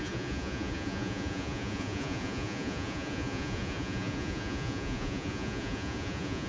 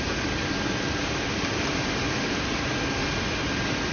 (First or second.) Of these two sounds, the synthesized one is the first